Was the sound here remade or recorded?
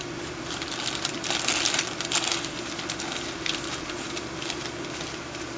recorded